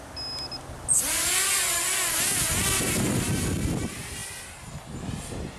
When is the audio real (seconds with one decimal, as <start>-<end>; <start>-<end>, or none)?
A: 0.0-5.6